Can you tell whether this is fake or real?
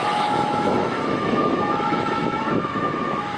fake